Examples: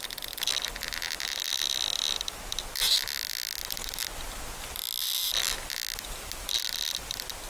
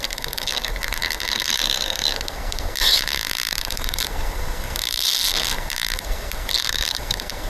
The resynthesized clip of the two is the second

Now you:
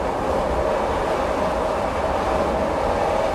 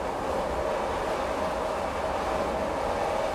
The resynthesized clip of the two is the first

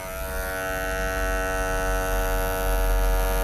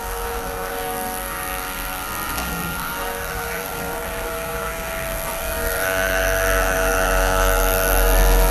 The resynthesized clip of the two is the second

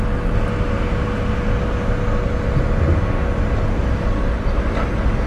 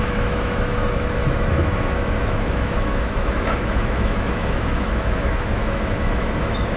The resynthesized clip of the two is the second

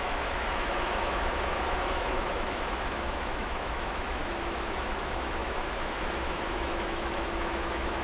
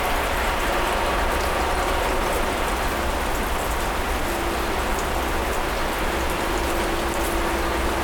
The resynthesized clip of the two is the first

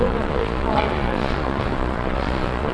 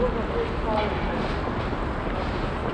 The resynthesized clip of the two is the first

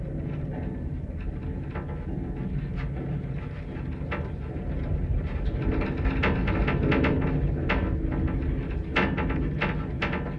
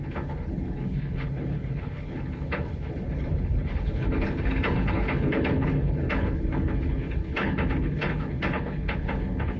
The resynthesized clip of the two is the second